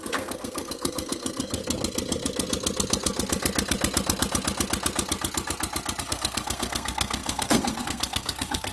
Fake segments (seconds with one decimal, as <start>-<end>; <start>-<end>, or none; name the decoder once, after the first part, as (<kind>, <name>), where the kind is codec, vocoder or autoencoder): 0.0-1.6 (codec, SNAC); 6.0-8.7